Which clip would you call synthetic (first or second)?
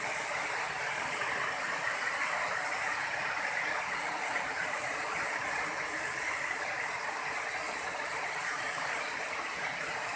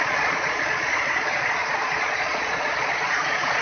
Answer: second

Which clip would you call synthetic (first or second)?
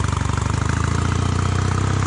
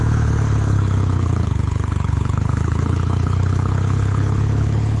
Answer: second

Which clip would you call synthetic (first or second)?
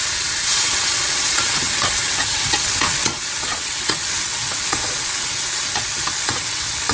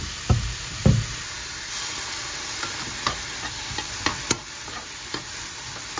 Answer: first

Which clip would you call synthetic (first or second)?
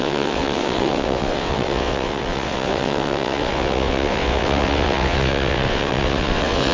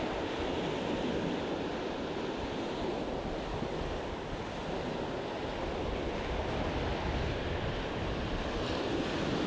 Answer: first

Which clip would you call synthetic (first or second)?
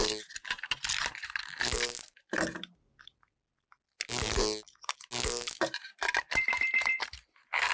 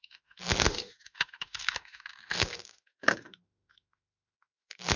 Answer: second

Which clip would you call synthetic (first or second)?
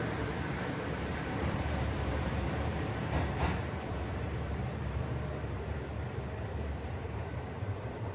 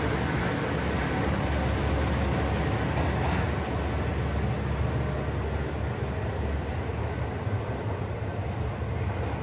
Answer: first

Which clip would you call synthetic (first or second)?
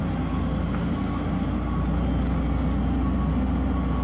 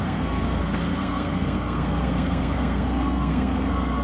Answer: second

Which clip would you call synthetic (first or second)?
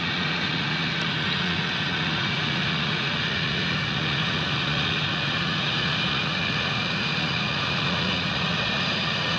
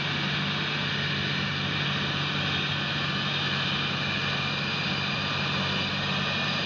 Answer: first